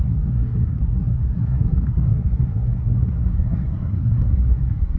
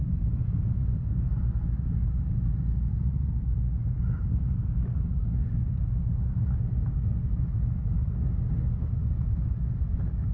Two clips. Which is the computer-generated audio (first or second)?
first